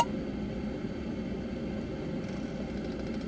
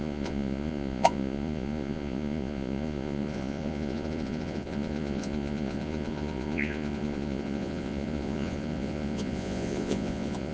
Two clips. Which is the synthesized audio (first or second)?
second